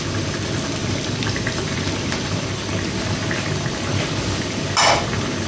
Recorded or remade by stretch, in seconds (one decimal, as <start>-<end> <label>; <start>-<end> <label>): 0.0-0.8 recorded; 0.8-2.5 remade; 2.5-5.5 recorded